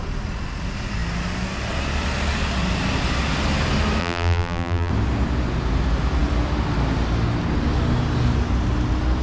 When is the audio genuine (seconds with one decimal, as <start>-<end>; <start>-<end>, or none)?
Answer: 0.0-4.0; 4.9-9.2